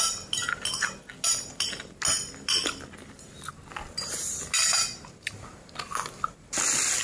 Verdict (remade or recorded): recorded